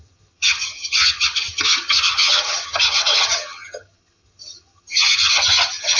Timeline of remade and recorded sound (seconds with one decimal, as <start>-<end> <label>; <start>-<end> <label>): 0.0-6.0 remade